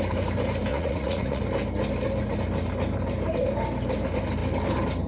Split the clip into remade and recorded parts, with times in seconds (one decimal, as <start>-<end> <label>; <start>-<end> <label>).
0.0-0.7 recorded; 0.7-1.4 remade; 1.4-5.1 recorded